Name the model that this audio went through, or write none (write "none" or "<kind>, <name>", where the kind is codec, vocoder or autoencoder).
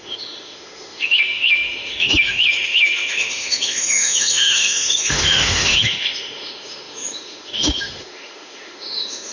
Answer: autoencoder, DAC-VAE